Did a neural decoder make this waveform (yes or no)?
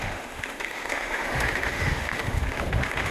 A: yes